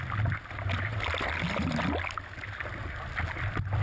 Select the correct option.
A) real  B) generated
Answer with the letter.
A